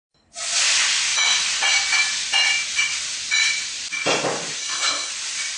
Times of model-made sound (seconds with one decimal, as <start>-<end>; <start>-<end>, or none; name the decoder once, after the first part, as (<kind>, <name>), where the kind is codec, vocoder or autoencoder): 4.6-5.1 (codec, SNAC)